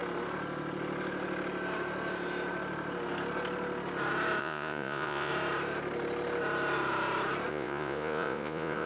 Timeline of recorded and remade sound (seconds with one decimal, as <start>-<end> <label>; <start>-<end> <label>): 0.0-4.4 recorded; 4.4-5.3 remade; 5.3-7.5 recorded; 7.5-8.9 remade